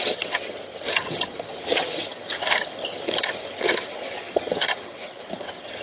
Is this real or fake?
fake